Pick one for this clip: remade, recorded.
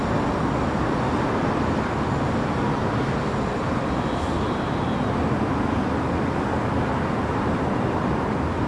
recorded